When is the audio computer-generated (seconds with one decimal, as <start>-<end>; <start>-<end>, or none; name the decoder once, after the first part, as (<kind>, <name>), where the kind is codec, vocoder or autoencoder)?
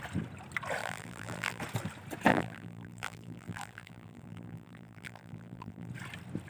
0.8-1.6 (vocoder, BigVGAN v2); 2.3-5.9